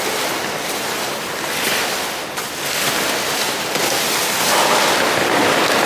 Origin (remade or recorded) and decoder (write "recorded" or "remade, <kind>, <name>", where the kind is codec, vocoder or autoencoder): recorded